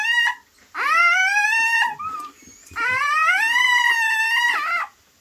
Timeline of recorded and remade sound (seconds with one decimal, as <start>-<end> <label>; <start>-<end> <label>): 0.0-1.0 recorded; 1.0-4.1 remade; 4.1-5.2 recorded